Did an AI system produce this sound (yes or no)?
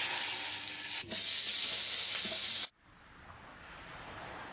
no